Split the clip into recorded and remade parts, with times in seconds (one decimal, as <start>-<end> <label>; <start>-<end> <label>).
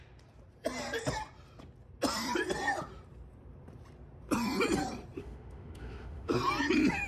0.0-5.2 recorded; 5.2-6.3 remade; 6.3-7.1 recorded